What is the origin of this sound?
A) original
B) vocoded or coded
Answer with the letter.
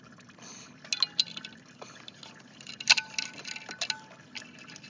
A